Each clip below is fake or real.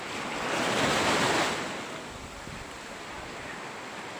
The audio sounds real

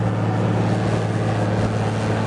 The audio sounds real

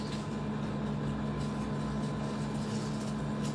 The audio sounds real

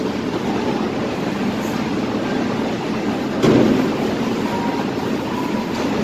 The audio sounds real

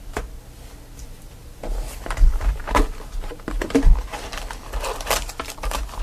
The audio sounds real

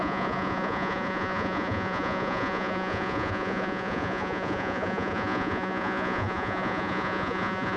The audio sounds fake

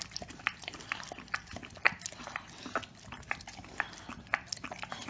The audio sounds real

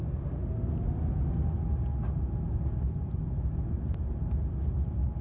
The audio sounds real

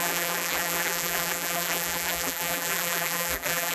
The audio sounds fake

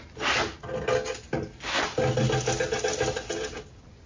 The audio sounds real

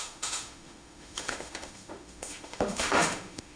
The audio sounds fake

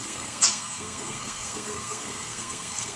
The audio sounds fake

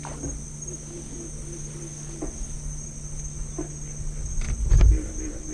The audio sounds real